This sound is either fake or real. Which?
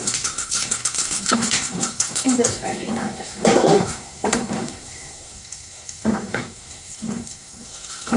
fake